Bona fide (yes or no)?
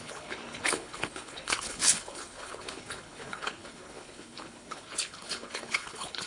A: no